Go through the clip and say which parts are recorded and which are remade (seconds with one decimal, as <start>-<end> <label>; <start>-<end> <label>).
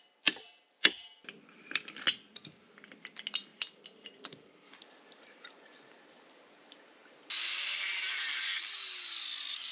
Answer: 0.0-3.5 recorded; 3.5-5.5 remade; 5.5-9.7 recorded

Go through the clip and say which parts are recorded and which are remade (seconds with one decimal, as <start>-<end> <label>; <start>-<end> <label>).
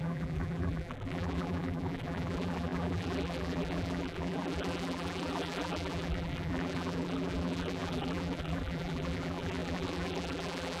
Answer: 0.0-10.8 remade